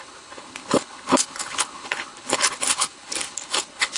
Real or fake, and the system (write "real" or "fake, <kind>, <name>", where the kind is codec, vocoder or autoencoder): fake, codec, HILCodec